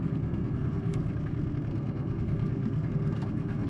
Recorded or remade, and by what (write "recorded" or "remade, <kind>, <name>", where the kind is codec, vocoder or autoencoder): remade, codec, SNAC